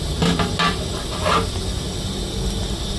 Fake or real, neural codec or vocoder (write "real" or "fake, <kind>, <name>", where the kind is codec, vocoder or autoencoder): real